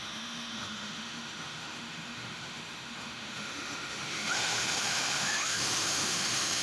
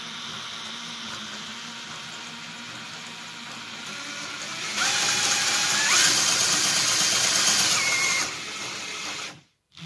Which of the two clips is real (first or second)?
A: second